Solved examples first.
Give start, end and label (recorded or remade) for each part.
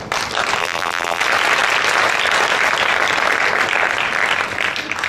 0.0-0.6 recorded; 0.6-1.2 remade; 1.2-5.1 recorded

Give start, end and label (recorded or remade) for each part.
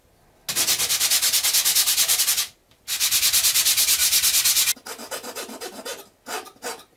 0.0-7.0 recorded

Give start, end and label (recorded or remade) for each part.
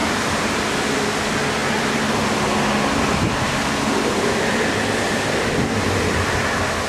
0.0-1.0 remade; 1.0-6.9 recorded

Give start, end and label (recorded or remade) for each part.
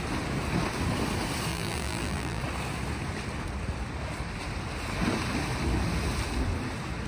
0.0-1.5 recorded; 1.5-2.4 remade; 2.4-7.1 recorded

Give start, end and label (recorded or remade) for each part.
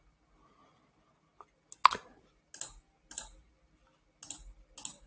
0.0-5.1 recorded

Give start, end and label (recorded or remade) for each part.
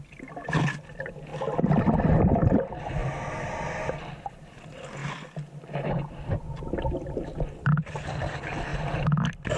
0.0-1.3 remade; 1.3-2.1 recorded; 2.1-3.0 remade; 3.0-4.3 recorded; 4.3-5.0 remade; 5.0-6.3 recorded; 6.3-8.7 remade; 8.7-9.6 recorded